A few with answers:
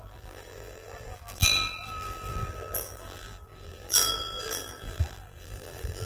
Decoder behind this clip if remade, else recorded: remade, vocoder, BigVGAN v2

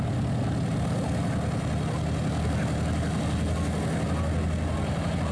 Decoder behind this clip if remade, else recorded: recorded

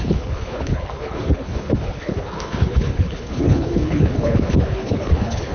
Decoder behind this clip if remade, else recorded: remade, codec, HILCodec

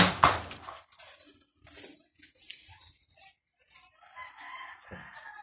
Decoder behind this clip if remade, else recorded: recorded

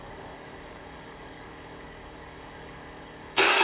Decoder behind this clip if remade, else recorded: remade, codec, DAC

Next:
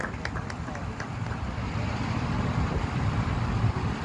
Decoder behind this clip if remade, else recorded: recorded